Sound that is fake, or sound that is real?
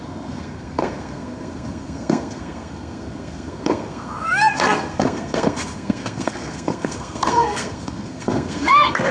fake